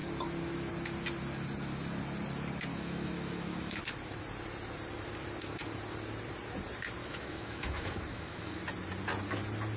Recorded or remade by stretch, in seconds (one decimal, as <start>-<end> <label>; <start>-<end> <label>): 0.0-2.7 recorded; 2.7-3.8 remade; 3.8-7.0 recorded; 7.0-8.6 remade; 8.6-9.8 recorded